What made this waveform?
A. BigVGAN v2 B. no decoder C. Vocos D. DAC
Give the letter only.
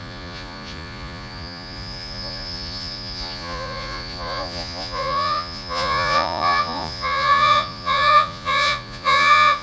C